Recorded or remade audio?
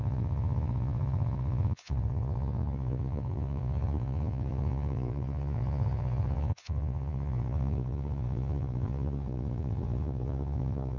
remade